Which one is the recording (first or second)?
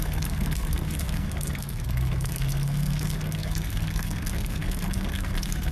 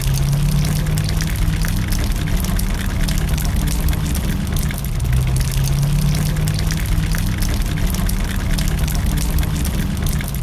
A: second